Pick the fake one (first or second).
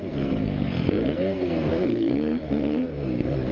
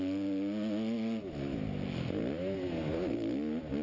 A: first